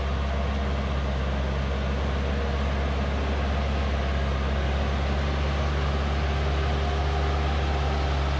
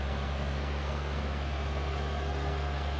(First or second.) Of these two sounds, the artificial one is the second